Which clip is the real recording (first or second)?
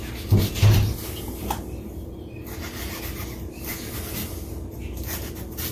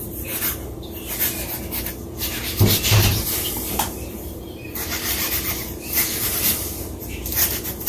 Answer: first